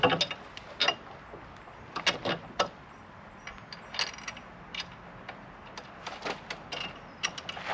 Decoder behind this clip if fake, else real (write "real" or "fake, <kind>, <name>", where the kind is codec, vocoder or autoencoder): real